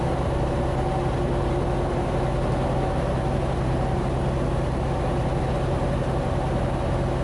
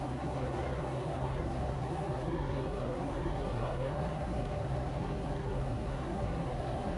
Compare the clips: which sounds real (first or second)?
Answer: first